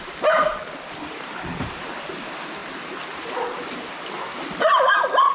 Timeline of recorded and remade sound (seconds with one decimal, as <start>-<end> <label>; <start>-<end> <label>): 0.0-2.6 recorded; 2.6-3.2 remade; 3.2-5.3 recorded